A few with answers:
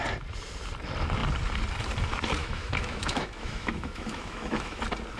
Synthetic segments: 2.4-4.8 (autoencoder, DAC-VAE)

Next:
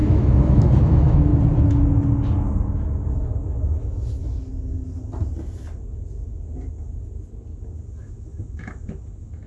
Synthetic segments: 0.0-1.3 (autoencoder, DAC-VAE); 3.1-4.2; 8.0-9.5

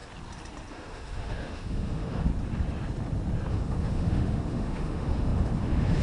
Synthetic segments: 0.7-2.3 (autoencoder, DAC-VAE); 3.5-6.0